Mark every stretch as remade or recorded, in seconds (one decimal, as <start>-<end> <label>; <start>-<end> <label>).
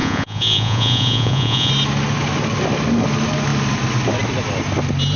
0.0-1.7 remade; 1.7-5.2 recorded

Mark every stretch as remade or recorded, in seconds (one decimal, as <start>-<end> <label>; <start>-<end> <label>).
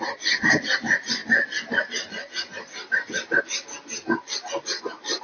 0.0-5.2 recorded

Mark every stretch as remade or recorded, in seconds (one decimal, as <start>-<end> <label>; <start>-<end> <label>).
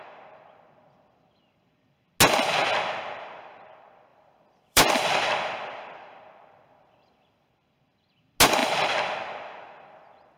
0.0-4.1 recorded; 4.1-7.5 remade; 7.5-10.4 recorded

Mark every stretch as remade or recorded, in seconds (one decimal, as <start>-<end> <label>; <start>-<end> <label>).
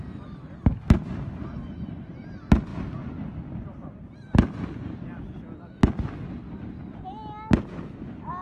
0.0-8.4 recorded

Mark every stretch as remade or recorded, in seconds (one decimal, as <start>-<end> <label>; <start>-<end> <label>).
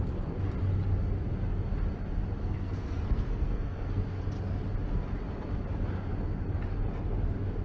0.0-2.4 recorded; 2.4-4.2 remade; 4.2-7.6 recorded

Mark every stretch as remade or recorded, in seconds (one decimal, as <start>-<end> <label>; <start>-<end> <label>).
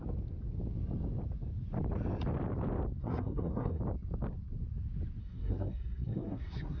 0.0-3.0 recorded; 3.0-3.8 remade; 3.8-5.2 recorded; 5.2-6.8 remade